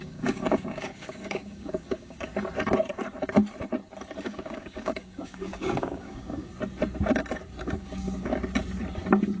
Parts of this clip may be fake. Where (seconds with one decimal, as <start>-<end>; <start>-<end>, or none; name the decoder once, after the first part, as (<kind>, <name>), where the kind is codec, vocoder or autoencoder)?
0.0-2.3 (codec, DAC); 4.2-6.5; 7.6-8.3